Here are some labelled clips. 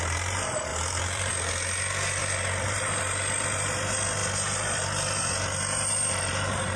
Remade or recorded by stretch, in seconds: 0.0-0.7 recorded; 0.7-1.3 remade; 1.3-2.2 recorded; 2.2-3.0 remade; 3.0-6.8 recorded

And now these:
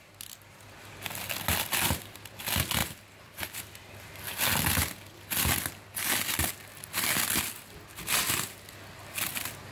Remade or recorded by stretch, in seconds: 0.0-2.8 recorded; 2.8-3.6 remade; 3.6-6.7 recorded; 6.7-7.4 remade; 7.4-9.7 recorded